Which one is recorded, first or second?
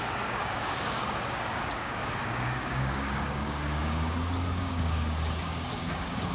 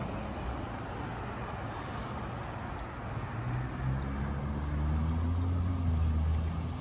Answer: second